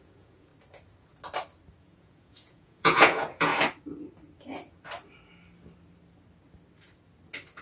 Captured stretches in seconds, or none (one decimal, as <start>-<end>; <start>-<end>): 0.5-1.8; 3.5-7.6